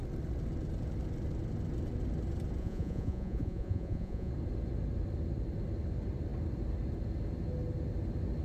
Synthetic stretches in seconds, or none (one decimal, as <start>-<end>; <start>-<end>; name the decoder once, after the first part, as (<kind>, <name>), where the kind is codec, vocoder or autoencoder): 2.6-4.3 (vocoder, Vocos)